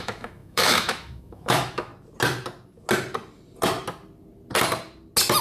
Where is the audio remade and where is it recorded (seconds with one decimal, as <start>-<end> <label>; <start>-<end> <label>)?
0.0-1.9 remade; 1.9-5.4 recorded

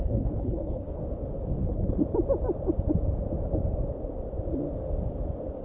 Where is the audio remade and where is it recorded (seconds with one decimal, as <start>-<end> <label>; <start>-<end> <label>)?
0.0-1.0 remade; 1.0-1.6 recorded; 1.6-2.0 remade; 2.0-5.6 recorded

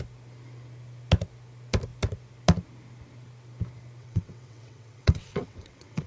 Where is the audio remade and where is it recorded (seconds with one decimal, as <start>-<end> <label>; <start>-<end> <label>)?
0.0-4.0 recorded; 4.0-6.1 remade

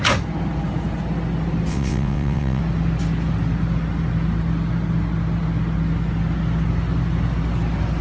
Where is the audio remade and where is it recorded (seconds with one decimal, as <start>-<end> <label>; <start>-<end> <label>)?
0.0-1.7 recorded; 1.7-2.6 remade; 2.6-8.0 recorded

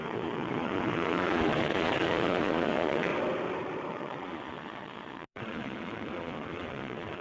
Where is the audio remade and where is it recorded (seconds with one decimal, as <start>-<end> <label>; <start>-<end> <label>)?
0.0-3.1 remade; 3.1-3.9 recorded; 3.9-7.2 remade

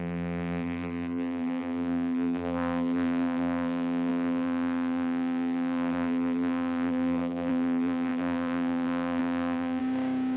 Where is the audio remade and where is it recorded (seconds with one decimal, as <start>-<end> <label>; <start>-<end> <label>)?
0.0-9.8 remade; 9.8-10.4 recorded